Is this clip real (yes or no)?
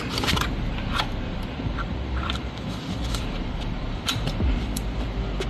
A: no